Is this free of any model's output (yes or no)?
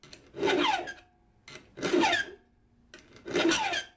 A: yes